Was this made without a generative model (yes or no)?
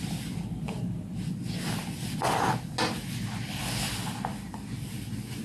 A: yes